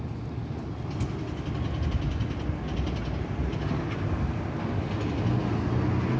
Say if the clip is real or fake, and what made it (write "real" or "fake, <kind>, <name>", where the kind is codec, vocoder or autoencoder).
real